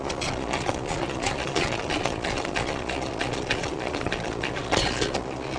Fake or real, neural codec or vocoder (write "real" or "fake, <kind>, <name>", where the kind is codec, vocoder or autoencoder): fake, vocoder, Vocos